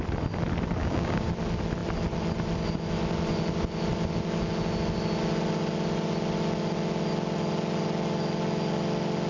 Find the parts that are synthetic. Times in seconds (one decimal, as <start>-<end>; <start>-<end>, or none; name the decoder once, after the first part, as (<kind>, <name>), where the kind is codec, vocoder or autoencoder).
0.8-1.3 (codec, DAC)